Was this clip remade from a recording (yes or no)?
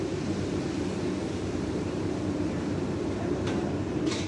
yes